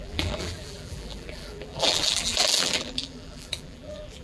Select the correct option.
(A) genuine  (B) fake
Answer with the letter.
B